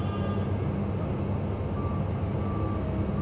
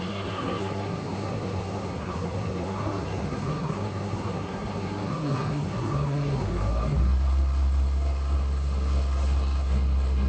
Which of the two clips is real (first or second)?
first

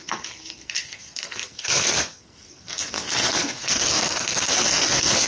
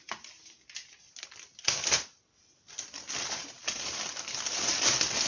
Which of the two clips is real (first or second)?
second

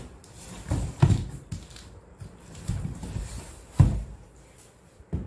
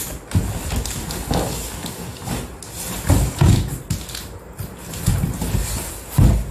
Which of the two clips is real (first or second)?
second